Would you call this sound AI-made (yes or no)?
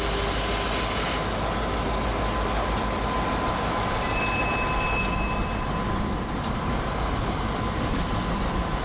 no